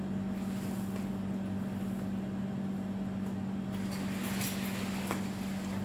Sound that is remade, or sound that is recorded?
recorded